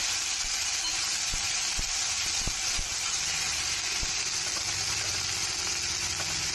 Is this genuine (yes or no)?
yes